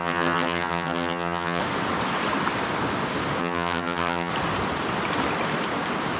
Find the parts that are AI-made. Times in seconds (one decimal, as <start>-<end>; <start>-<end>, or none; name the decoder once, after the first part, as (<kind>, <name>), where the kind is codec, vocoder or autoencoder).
0.0-1.6 (vocoder, HiFi-GAN); 3.4-4.3

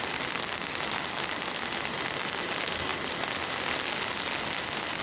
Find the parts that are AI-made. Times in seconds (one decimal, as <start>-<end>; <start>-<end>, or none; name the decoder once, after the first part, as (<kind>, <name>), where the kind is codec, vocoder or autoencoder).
none

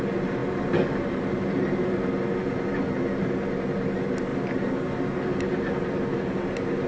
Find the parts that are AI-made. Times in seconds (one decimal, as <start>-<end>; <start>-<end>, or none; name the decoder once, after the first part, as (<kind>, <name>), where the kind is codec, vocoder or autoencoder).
none